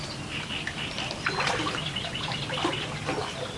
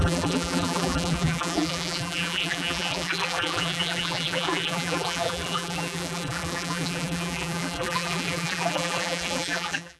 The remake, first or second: second